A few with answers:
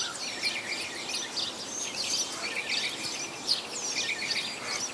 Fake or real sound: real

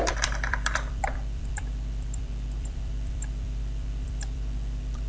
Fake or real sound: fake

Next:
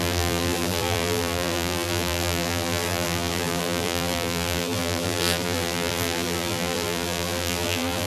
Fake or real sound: fake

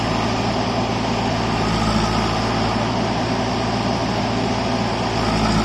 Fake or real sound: real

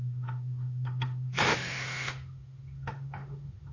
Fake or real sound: fake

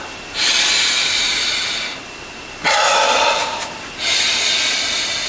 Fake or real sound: real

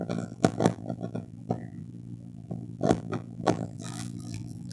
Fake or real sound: fake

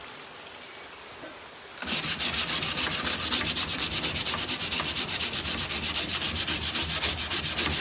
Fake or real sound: real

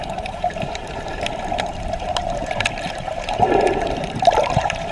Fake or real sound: fake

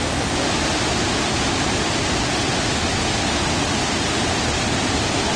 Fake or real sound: real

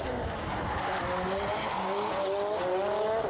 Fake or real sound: real